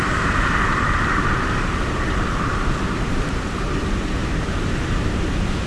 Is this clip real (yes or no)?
no